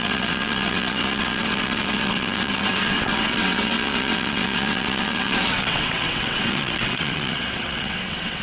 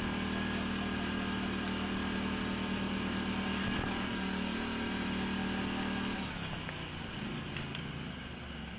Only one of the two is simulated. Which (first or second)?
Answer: first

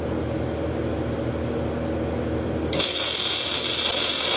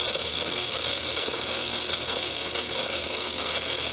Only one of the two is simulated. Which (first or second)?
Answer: second